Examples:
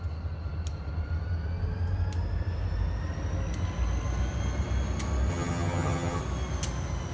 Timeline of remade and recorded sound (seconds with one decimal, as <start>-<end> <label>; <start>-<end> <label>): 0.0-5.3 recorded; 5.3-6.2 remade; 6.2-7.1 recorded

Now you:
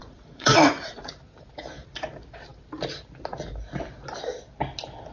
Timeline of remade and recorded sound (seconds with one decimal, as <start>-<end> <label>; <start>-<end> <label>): 0.0-1.1 remade; 1.1-5.1 recorded

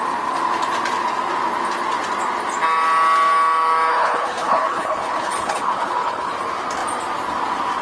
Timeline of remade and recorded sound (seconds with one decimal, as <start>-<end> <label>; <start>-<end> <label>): 0.0-3.9 recorded; 3.9-6.3 remade; 6.3-7.8 recorded

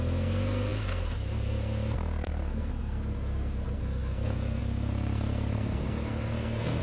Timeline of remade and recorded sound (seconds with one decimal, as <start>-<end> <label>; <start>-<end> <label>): 0.0-6.8 remade

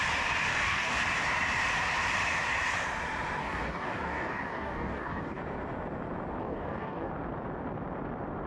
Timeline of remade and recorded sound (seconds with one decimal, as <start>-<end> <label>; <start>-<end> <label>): 0.0-0.5 recorded; 0.5-1.0 remade; 1.0-3.4 recorded; 3.4-5.4 remade; 5.4-6.4 recorded; 6.4-7.1 remade; 7.1-8.5 recorded

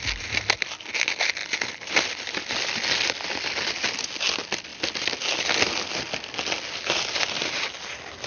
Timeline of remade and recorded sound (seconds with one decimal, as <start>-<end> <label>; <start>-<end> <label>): 0.0-8.3 recorded